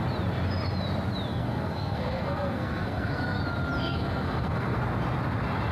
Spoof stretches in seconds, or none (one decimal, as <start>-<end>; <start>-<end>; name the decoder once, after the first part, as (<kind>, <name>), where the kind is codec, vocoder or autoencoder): 1.3-3.4 (codec, SNAC); 3.8-4.8